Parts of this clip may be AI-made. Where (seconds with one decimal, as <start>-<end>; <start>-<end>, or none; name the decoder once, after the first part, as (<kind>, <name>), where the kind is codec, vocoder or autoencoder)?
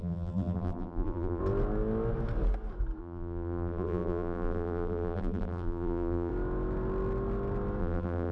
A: 0.0-1.4 (vocoder, BigVGAN v2); 3.0-6.3; 7.8-8.3